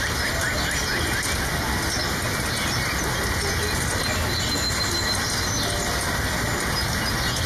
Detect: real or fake real